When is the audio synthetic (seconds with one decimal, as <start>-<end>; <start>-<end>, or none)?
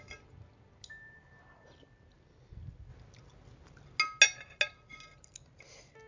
none